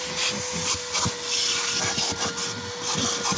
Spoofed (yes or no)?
no